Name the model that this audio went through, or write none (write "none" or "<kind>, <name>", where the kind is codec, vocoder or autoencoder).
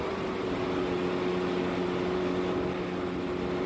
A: none